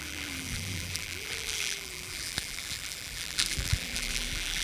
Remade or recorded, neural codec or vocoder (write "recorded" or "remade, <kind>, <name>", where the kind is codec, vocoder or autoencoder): remade, vocoder, BigVGAN v2